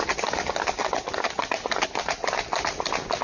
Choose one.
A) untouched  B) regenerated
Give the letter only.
A